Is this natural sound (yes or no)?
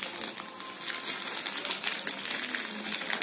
yes